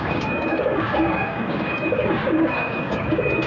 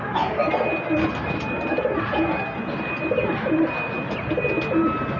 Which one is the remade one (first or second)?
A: first